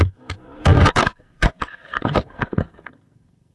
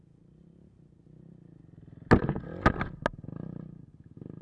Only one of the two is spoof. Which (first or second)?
first